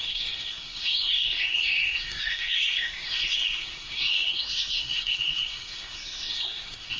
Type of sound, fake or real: fake